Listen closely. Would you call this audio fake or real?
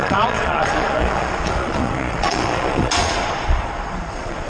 fake